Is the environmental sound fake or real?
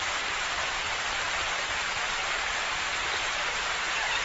fake